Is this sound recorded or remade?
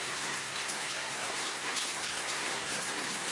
remade